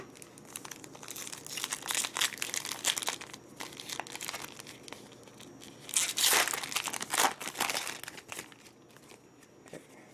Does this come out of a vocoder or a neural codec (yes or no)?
no